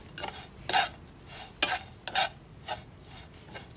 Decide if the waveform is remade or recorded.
recorded